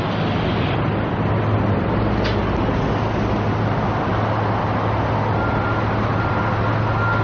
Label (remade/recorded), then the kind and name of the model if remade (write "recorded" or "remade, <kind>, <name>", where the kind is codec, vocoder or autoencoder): recorded